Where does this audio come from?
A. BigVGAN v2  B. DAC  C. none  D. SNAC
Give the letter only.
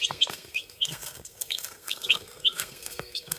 D